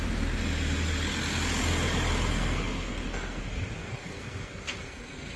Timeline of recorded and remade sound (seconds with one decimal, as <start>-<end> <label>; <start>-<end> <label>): 0.0-2.3 recorded; 2.3-3.4 remade; 3.4-3.8 recorded; 3.8-5.4 remade